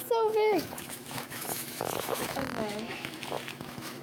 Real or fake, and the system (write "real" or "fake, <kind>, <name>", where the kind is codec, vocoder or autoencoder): fake, autoencoder, DAC-VAE